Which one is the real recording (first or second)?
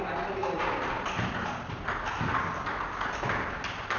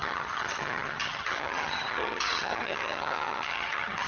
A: first